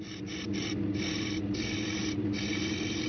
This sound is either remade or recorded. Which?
recorded